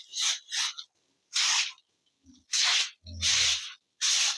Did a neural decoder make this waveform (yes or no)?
no